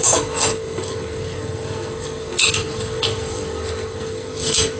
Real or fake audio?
fake